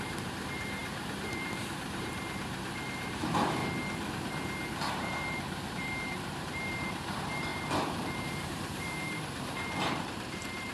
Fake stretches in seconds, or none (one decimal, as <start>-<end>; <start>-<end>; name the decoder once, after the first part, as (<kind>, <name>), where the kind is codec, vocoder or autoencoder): 0.0-3.6 (vocoder, BigVGAN v2); 4.9-10.7

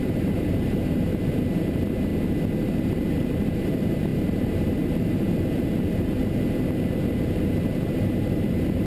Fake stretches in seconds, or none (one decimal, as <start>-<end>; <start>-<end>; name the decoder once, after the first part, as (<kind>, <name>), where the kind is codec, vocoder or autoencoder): 0.0-2.1 (vocoder, BigVGAN v2); 2.6-6.2; 7.1-8.9